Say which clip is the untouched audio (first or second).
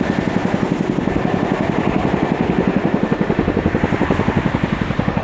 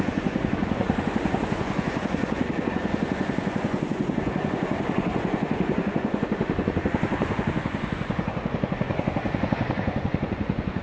first